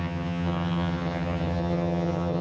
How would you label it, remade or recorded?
remade